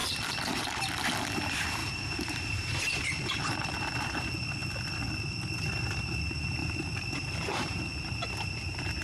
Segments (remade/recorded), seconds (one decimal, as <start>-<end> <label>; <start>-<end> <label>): 0.0-0.9 remade; 0.9-1.8 recorded; 1.8-3.4 remade; 3.4-6.6 recorded; 6.6-7.8 remade; 7.8-9.0 recorded